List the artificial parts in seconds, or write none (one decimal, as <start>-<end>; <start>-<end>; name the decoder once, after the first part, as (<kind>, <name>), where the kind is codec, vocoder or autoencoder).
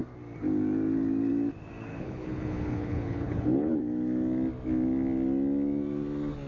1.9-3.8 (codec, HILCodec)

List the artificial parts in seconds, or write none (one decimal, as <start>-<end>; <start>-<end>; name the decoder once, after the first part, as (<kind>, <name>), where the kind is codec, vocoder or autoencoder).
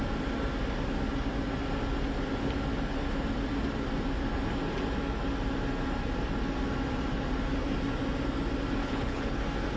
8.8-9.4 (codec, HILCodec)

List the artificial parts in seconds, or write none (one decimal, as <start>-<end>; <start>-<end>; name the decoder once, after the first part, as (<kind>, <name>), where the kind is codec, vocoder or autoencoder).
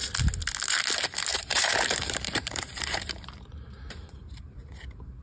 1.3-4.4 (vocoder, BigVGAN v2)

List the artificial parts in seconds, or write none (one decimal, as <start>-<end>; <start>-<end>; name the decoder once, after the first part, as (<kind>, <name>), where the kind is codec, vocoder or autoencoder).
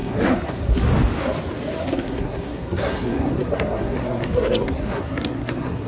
0.0-0.9 (codec, SNAC); 1.8-5.9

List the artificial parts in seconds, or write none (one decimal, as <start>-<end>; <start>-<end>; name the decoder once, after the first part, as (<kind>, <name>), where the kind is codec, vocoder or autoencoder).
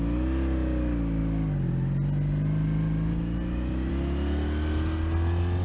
none